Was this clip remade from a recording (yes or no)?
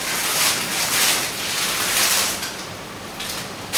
no